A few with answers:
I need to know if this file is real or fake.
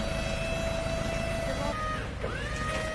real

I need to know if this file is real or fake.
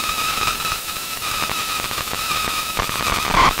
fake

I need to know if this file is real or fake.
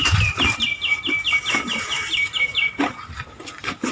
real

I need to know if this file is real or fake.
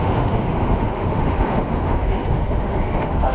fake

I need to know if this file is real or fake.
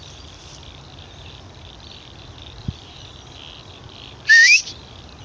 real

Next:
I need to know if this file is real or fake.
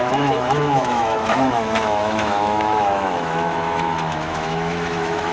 fake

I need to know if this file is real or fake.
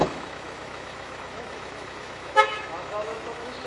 fake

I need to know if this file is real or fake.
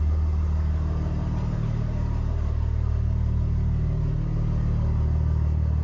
real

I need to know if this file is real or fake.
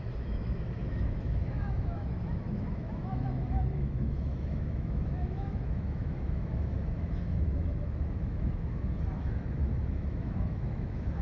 fake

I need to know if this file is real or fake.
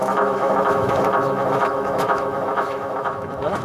fake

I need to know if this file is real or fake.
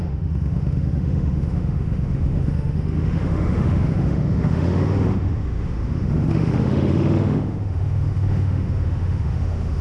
fake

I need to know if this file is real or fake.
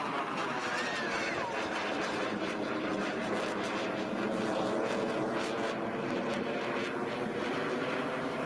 real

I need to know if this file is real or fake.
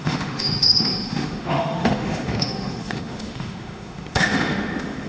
fake